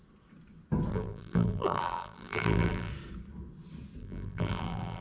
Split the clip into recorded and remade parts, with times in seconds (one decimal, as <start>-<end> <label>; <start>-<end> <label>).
0.0-0.9 recorded; 0.9-2.9 remade; 2.9-4.0 recorded; 4.0-5.0 remade